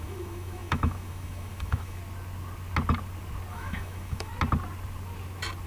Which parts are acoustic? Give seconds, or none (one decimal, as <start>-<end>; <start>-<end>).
2.0-3.5; 4.3-5.7